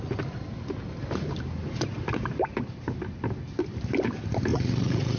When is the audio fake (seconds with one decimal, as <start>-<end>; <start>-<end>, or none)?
4.5-5.2